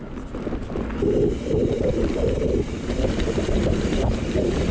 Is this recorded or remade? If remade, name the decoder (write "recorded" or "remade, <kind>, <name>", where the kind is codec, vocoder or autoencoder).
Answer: recorded